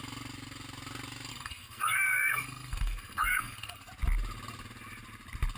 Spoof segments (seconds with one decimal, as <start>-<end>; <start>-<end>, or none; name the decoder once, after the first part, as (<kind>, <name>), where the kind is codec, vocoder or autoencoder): 1.3-3.9 (codec, SNAC)